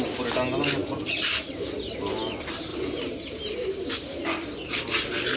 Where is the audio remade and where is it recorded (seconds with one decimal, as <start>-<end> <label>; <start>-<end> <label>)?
0.0-0.8 recorded; 0.8-1.6 remade; 1.6-2.7 recorded; 2.7-4.5 remade; 4.5-5.4 recorded